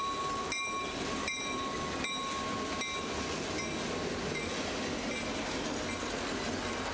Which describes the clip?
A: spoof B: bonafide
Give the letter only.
B